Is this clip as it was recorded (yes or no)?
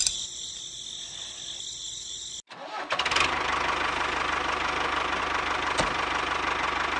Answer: yes